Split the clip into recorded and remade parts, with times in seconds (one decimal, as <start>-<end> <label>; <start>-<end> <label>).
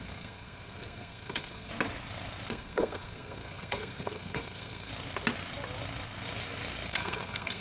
0.0-1.7 remade; 1.7-2.5 recorded; 2.5-4.9 remade; 4.9-6.9 recorded; 6.9-7.6 remade